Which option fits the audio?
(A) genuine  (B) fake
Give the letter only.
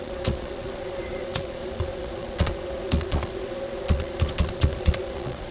B